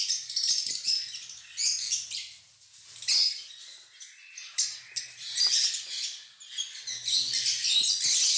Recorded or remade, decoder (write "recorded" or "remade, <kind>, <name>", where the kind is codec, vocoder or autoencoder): recorded